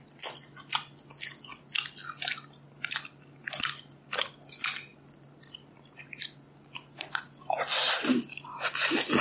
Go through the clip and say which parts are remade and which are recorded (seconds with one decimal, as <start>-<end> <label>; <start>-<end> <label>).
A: 0.0-1.5 recorded; 1.5-3.1 remade; 3.1-4.9 recorded; 4.9-9.2 remade